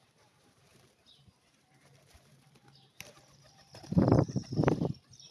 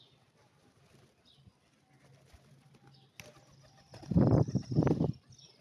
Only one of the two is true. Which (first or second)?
second